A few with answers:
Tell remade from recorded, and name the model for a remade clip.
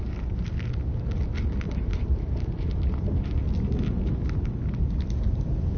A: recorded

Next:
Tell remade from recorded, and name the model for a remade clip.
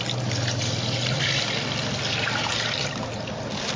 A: recorded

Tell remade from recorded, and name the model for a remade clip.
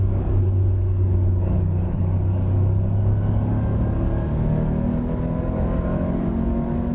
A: remade, codec, DAC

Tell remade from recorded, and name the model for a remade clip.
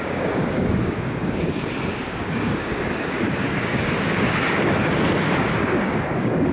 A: remade, codec, DAC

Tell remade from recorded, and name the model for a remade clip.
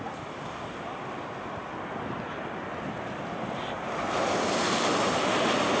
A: recorded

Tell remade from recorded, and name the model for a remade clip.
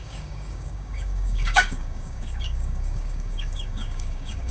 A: remade, codec, DAC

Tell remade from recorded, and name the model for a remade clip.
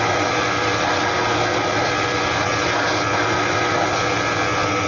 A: recorded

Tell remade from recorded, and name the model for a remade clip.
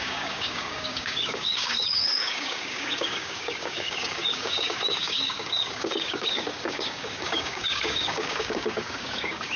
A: remade, codec, DAC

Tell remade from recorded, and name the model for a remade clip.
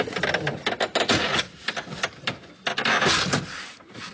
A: recorded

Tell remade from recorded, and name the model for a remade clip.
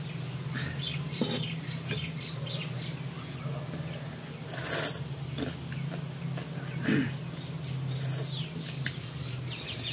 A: recorded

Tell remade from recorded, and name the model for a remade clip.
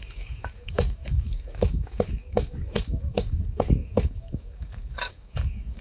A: remade, codec, DAC